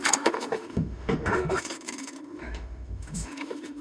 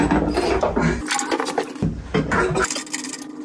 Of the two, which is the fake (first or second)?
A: first